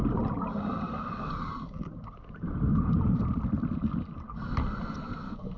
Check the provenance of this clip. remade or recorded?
recorded